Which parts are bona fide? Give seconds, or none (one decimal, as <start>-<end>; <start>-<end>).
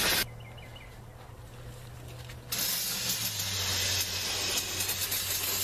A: 0.0-5.6